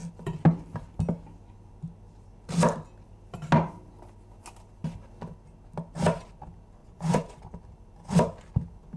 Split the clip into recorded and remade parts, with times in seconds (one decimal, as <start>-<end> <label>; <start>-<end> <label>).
0.0-6.8 recorded; 6.8-7.4 remade; 7.4-9.0 recorded